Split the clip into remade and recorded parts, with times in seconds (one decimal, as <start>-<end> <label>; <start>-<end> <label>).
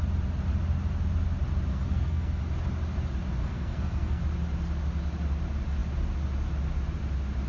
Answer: 0.0-1.7 recorded; 1.7-2.4 remade; 2.4-3.4 recorded; 3.4-4.2 remade; 4.2-7.5 recorded